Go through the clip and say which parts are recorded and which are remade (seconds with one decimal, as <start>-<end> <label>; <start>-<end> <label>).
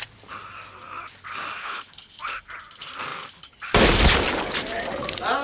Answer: 0.0-1.6 recorded; 1.6-2.2 remade; 2.2-5.4 recorded